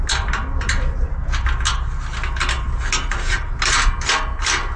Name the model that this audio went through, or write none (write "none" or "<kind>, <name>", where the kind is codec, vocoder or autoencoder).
none